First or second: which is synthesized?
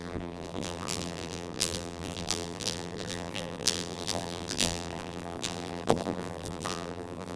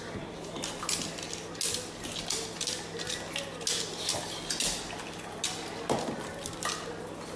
first